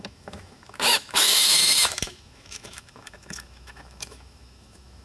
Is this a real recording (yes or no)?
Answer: no